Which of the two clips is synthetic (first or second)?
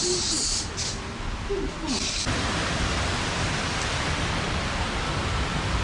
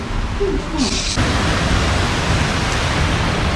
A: first